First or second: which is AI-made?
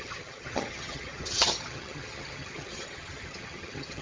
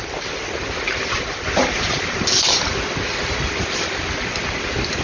first